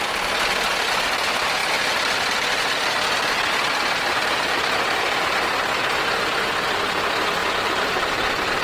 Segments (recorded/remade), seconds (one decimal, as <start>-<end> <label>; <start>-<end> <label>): 0.0-7.4 recorded; 7.4-8.2 remade; 8.2-8.6 recorded